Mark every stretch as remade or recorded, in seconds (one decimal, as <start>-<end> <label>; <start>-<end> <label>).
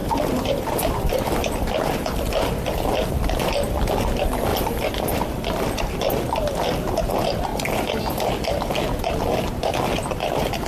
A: 0.0-3.5 remade; 3.5-4.5 recorded; 4.5-6.0 remade; 6.0-7.5 recorded; 7.5-8.3 remade; 8.3-10.7 recorded